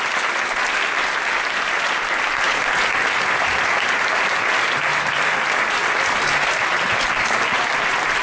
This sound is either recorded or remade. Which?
recorded